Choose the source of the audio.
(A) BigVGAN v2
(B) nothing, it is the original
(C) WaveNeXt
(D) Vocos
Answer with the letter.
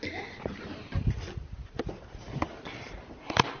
B